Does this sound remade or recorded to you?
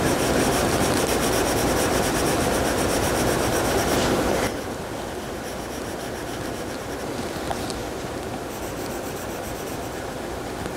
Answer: remade